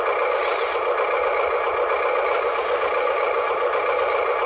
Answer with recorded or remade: recorded